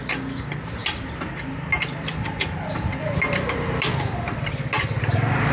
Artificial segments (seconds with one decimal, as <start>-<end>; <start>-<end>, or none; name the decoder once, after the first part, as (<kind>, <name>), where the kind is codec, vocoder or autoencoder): none